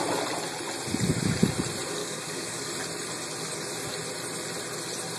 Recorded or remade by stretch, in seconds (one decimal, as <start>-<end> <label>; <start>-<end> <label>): 0.0-2.0 recorded; 2.0-2.7 remade; 2.7-5.2 recorded